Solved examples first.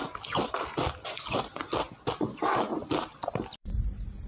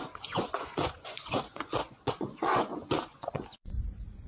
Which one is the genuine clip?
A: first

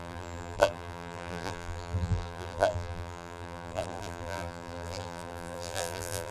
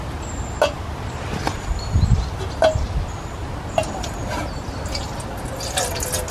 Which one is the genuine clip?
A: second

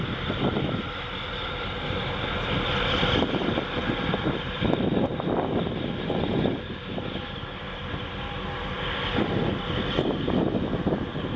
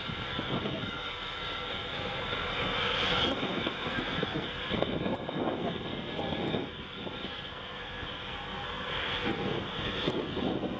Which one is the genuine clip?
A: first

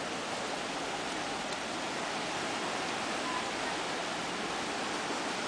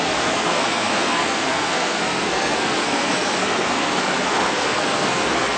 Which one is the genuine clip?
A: first